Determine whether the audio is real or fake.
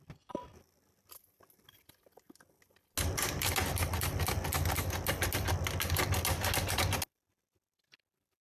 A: real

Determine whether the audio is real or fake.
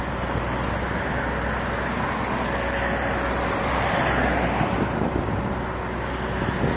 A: real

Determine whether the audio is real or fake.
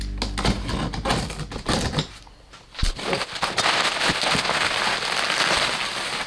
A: real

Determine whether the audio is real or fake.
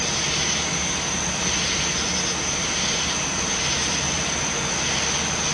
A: real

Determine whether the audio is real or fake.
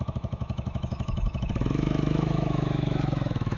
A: fake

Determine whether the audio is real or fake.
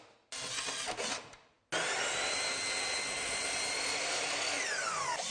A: real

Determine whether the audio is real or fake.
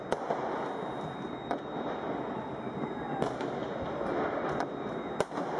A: real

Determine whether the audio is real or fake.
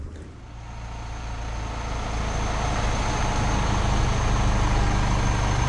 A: real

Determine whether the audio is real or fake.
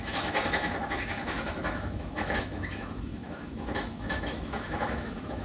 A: fake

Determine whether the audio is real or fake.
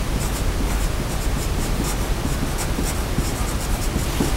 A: real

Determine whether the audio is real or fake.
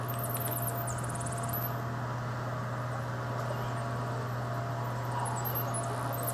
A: real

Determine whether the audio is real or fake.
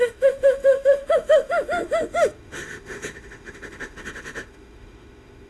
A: fake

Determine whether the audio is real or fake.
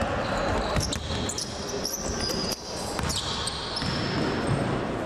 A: real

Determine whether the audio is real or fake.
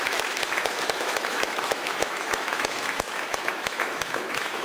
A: fake